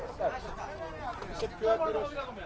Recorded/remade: recorded